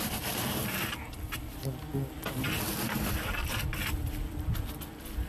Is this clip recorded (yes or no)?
yes